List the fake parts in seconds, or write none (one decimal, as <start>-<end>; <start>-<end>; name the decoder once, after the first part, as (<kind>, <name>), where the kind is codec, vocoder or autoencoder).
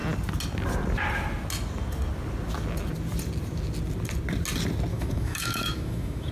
4.9-6.3 (autoencoder, DAC-VAE)